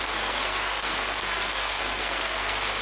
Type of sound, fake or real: fake